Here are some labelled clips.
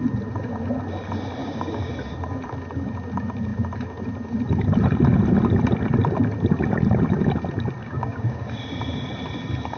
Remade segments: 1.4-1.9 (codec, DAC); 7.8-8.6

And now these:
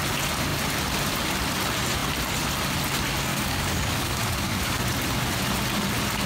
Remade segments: 3.3-4.8 (codec, DAC)

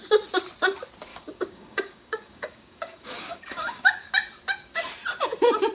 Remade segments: 1.1-4.1 (codec, DAC)

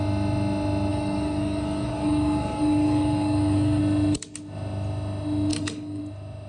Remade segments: 0.9-3.8 (codec, DAC); 5.5-6.0

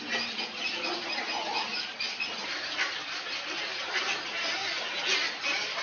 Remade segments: none

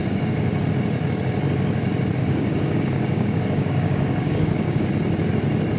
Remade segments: 0.0-0.5 (codec, DAC); 2.2-4.9

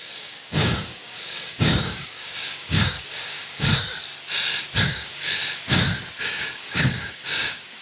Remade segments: 0.0-3.7 (codec, DAC); 4.8-5.4; 6.2-7.8

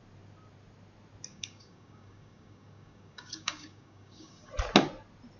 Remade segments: 1.3-4.5 (codec, DAC)